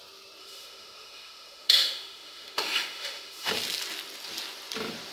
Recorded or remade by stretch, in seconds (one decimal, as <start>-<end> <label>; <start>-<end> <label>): 0.0-0.4 recorded; 0.4-3.5 remade; 3.5-5.1 recorded